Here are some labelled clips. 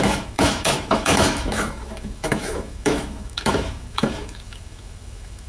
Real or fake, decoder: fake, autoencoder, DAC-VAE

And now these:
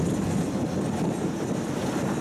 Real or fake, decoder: real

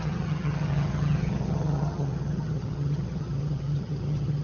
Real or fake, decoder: fake, vocoder, HiFi-GAN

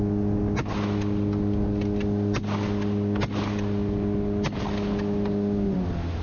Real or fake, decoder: real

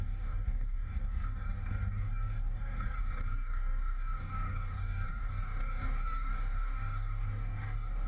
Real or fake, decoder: fake, codec, DAC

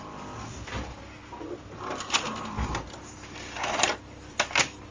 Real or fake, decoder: real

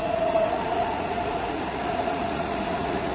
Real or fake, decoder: fake, vocoder, Vocos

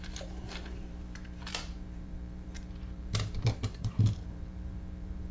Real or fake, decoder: fake, vocoder, BigVGAN v2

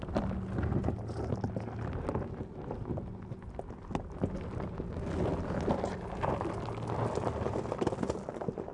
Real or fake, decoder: real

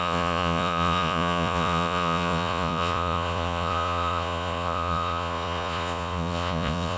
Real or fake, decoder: fake, vocoder, Vocos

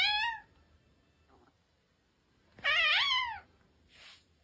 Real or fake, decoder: real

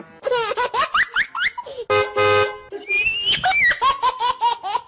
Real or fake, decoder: real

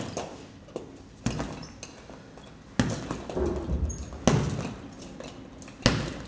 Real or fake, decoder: real